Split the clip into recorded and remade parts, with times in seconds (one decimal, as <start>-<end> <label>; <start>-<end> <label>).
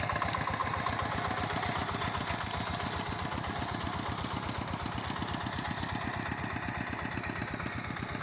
0.0-8.2 recorded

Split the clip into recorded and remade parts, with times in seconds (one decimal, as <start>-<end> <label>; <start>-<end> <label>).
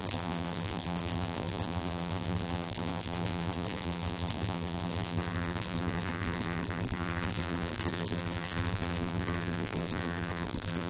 0.0-10.9 remade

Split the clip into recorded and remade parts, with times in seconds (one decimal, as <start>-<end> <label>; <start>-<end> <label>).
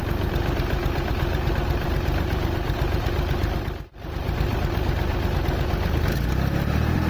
0.0-0.8 recorded; 0.8-5.1 remade; 5.1-7.1 recorded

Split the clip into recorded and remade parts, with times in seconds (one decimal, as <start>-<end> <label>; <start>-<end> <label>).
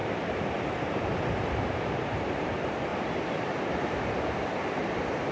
0.0-0.8 recorded; 0.8-2.9 remade; 2.9-3.4 recorded; 3.4-5.3 remade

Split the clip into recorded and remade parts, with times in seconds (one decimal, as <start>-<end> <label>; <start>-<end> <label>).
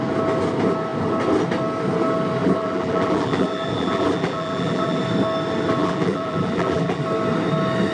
0.0-2.4 recorded; 2.4-5.0 remade; 5.0-5.8 recorded; 5.8-7.0 remade; 7.0-7.9 recorded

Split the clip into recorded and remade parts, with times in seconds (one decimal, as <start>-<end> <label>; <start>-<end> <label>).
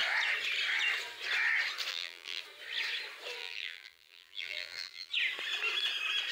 0.0-1.9 recorded; 1.9-2.4 remade; 2.4-3.4 recorded; 3.4-5.1 remade; 5.1-6.3 recorded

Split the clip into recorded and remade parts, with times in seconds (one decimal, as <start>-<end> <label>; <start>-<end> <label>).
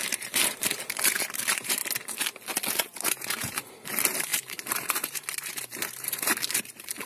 0.0-1.8 remade; 1.8-2.7 recorded; 2.7-7.1 remade